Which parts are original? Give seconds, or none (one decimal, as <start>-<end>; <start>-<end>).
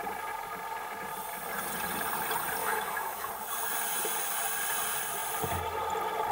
0.0-2.6; 3.3-6.3